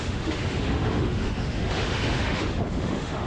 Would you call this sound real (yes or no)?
no